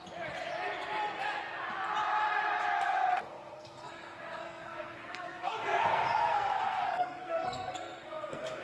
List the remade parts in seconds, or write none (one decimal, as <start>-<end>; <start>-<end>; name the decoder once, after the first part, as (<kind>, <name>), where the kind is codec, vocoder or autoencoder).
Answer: 3.2-8.6 (codec, SNAC)